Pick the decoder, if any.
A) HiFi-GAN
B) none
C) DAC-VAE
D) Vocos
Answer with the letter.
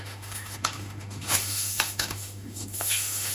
C